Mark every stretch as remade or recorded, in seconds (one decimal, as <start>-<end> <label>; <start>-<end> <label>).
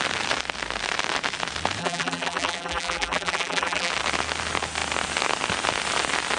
0.0-1.8 recorded; 1.8-3.9 remade; 3.9-6.4 recorded